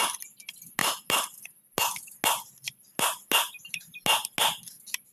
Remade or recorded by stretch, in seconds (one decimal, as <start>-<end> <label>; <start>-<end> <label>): 0.0-5.1 recorded

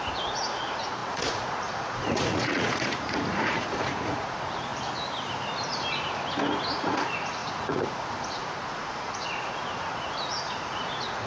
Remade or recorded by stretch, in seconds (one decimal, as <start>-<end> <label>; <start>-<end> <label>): 0.0-4.7 remade; 4.7-6.7 recorded; 6.7-11.3 remade

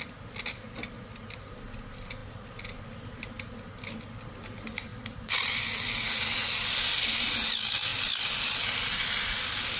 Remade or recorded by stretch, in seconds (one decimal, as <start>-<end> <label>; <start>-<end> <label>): 0.0-9.8 recorded

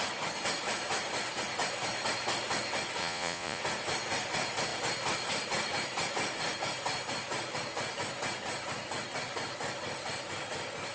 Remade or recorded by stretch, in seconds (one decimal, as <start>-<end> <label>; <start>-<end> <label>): 0.0-3.0 recorded; 3.0-3.6 remade; 3.6-10.9 recorded

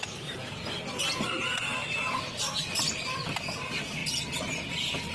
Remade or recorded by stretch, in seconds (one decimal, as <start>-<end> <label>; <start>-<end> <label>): 0.0-5.1 recorded

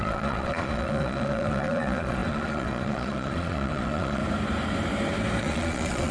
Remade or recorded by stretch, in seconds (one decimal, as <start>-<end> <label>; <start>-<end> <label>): 0.0-4.2 remade; 4.2-5.4 recorded; 5.4-6.1 remade

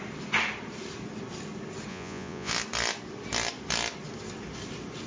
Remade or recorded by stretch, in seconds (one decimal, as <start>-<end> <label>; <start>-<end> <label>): 0.0-1.9 recorded; 1.9-2.5 remade; 2.5-5.1 recorded

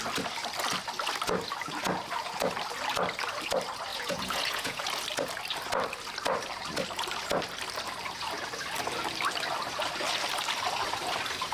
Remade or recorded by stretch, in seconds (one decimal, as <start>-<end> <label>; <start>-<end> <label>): 0.0-3.9 recorded; 3.9-4.9 remade; 4.9-11.5 recorded